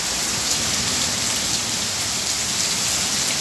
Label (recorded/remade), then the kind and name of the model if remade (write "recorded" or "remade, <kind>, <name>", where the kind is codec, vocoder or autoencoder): recorded